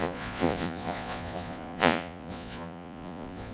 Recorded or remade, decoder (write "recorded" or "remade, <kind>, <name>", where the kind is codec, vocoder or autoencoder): remade, vocoder, Vocos